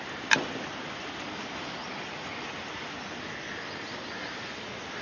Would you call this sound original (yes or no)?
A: yes